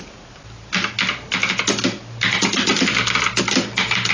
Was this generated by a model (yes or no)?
no